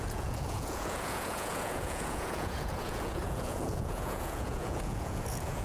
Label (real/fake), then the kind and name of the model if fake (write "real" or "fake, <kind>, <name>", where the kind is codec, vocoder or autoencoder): fake, vocoder, Vocos